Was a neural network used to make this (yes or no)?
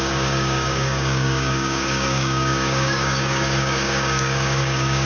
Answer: yes